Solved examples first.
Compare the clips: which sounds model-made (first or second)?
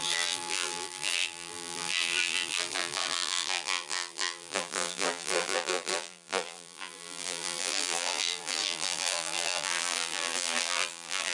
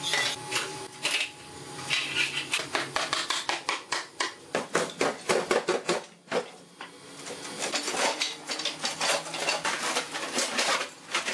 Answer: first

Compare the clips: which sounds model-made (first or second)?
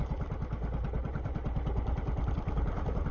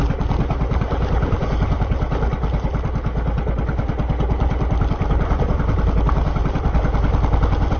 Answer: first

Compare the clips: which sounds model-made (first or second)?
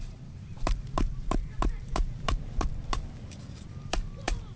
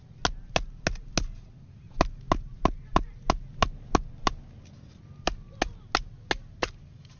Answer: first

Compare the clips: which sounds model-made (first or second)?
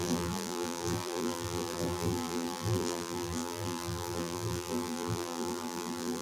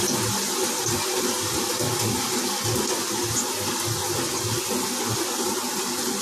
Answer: first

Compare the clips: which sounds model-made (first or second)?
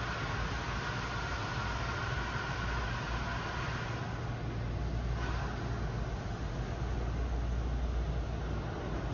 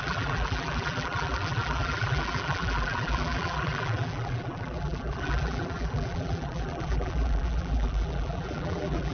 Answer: second